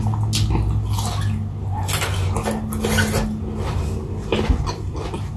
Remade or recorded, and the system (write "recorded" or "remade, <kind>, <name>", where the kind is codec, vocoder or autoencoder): recorded